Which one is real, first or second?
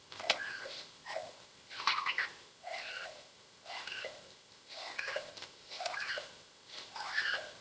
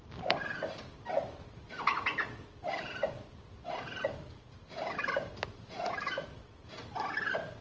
second